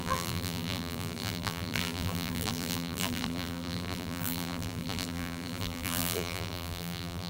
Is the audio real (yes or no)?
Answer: no